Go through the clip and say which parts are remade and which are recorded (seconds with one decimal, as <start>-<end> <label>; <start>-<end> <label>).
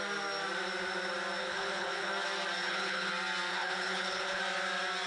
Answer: 0.0-1.4 recorded; 1.4-2.1 remade; 2.1-2.6 recorded; 2.6-3.1 remade; 3.1-3.5 recorded; 3.5-4.4 remade; 4.4-5.1 recorded